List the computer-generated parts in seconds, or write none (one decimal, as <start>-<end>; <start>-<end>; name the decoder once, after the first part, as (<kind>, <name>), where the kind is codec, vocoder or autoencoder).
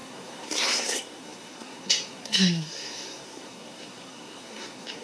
0.0-5.0 (codec, SNAC)